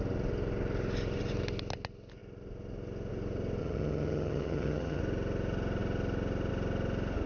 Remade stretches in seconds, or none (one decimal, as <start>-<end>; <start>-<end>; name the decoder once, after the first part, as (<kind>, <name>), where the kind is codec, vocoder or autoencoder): 3.6-5.0 (vocoder, HiFi-GAN)